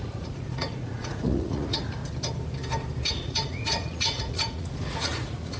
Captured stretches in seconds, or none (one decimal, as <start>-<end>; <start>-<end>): 2.0-3.1